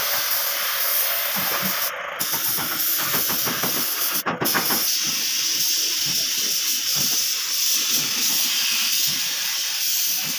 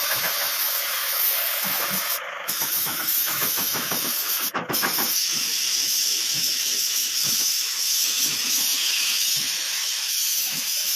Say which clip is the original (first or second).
first